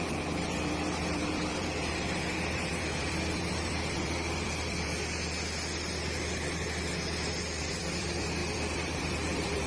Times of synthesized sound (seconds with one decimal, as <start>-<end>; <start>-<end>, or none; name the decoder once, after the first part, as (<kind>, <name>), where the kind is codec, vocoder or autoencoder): 0.0-4.9 (vocoder, BigVGAN v2); 7.6-9.7